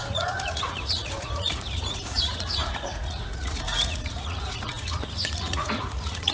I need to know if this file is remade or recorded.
remade